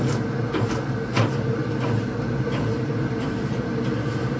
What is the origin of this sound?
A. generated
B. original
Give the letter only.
B